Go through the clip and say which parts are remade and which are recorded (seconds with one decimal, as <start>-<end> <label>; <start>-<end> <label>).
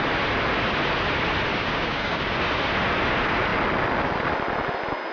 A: 0.0-1.5 recorded; 1.5-2.4 remade; 2.4-5.1 recorded